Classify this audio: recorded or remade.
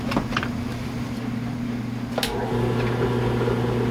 recorded